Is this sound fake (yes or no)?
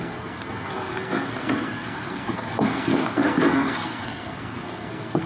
yes